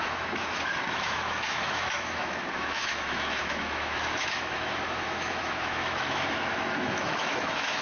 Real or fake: fake